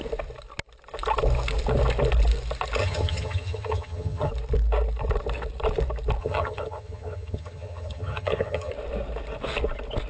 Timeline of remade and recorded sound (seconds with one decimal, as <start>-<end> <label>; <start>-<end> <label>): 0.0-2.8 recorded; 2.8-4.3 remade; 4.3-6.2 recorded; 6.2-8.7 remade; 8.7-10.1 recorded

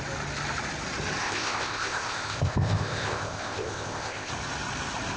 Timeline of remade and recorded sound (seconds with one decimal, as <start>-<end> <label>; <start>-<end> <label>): 0.0-1.2 recorded; 1.2-4.3 remade; 4.3-5.2 recorded

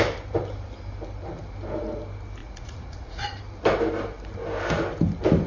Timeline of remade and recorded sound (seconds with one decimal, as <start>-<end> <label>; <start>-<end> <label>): 0.0-2.4 recorded; 2.4-3.4 remade; 3.4-5.5 recorded

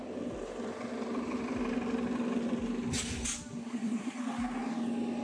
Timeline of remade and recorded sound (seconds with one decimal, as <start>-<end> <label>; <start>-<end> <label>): 0.0-3.6 recorded; 3.6-4.2 remade; 4.2-5.2 recorded